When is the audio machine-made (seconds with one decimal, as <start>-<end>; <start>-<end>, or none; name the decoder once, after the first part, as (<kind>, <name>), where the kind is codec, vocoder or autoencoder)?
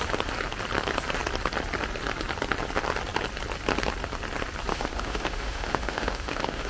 4.7-6.7 (autoencoder, DAC-VAE)